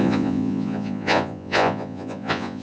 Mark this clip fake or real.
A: fake